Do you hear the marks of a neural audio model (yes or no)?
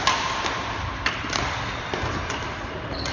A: no